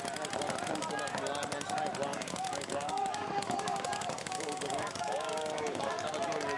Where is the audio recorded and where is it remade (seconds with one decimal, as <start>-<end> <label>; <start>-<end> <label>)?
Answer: 0.0-2.1 recorded; 2.1-6.1 remade; 6.1-6.6 recorded